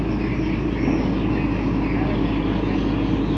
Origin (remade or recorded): recorded